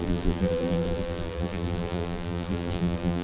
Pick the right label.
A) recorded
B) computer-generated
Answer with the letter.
B